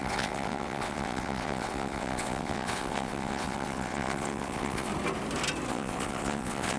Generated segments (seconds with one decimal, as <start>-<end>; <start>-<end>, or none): 0.0-4.9; 5.7-6.8